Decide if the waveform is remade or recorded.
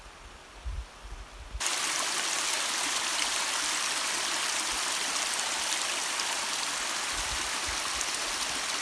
recorded